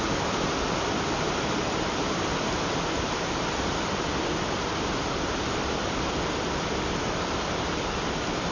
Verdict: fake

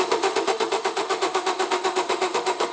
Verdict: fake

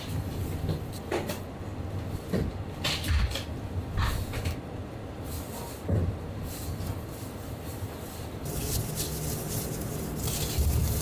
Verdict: real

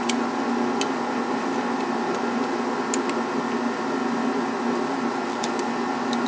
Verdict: real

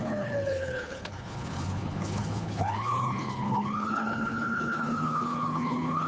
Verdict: fake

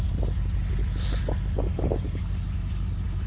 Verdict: real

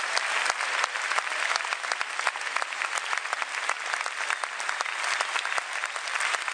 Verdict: real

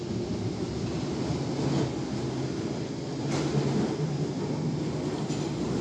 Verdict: real